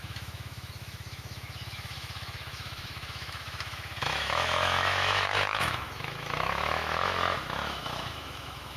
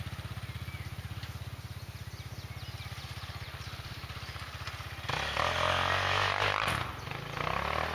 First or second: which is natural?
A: second